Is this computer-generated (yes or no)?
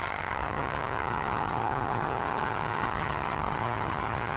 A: yes